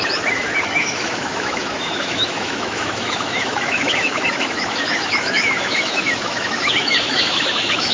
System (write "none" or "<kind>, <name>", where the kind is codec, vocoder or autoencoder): autoencoder, DAC-VAE